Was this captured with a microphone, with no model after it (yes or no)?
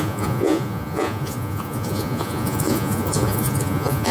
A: no